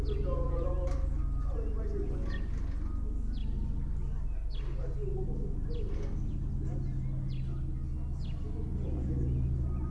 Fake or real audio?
real